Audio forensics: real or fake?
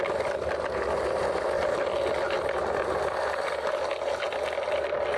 real